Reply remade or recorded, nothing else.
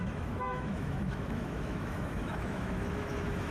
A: remade